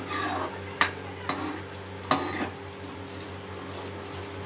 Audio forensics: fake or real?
real